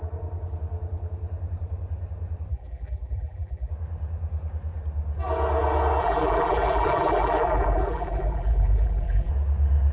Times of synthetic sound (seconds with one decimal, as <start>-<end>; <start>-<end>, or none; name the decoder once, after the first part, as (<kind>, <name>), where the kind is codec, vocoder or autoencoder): 2.5-3.7 (vocoder, BigVGAN v2); 6.0-9.3